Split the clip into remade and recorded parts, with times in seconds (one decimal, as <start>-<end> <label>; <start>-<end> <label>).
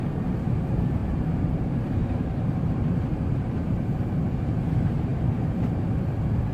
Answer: 0.0-5.1 remade; 5.1-5.7 recorded; 5.7-6.5 remade